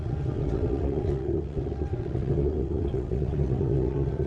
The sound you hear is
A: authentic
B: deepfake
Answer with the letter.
B